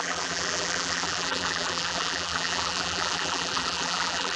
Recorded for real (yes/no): no